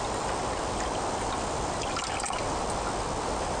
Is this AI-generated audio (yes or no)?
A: no